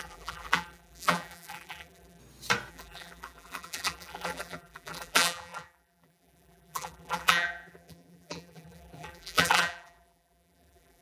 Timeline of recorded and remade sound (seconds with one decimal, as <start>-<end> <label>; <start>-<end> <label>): 0.0-2.2 remade; 2.2-2.7 recorded; 2.7-11.0 remade